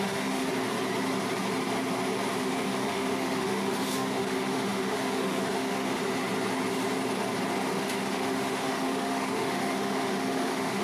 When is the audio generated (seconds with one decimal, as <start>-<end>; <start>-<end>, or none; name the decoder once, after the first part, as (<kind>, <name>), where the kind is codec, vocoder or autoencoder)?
0.0-0.5 (autoencoder, DAC-VAE); 2.4-6.0; 7.5-10.8